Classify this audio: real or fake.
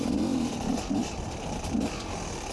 fake